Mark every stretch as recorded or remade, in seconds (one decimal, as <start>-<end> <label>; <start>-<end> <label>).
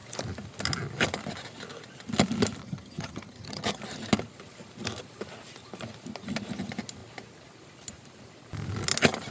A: 0.0-2.6 recorded; 2.6-3.8 remade; 3.8-9.3 recorded